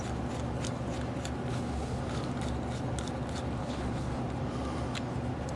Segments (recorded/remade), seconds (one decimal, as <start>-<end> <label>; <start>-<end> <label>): 0.0-1.5 recorded; 1.5-2.0 remade; 2.0-3.6 recorded; 3.6-4.2 remade; 4.2-5.6 recorded